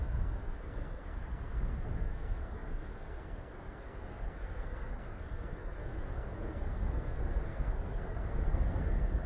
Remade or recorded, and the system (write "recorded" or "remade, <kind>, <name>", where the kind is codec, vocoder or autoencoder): remade, codec, SNAC